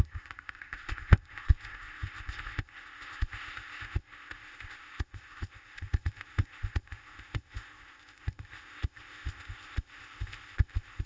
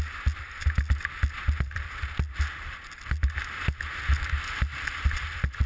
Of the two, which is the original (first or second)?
second